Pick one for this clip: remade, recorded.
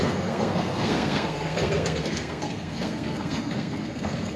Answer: remade